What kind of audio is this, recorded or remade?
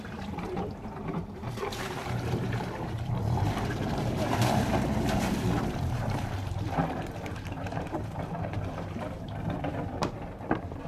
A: remade